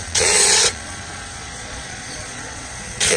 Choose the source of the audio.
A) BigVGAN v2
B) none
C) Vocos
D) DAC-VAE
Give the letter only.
C